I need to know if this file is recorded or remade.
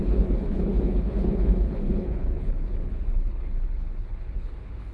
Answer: remade